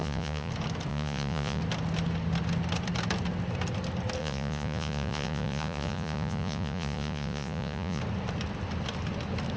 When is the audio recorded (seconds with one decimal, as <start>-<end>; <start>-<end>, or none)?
0.5-0.9; 1.6-4.2; 8.0-9.6